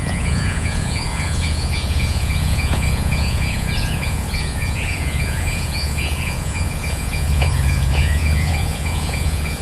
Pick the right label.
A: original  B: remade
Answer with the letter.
B